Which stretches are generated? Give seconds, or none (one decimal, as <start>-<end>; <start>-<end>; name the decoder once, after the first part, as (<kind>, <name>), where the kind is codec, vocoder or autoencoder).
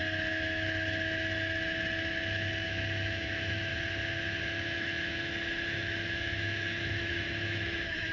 0.0-3.7 (autoencoder, DAC-VAE); 4.4-8.1